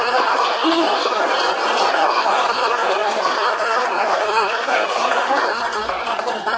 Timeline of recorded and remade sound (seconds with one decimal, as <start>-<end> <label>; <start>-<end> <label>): 0.0-1.3 remade; 1.3-1.9 recorded; 1.9-6.6 remade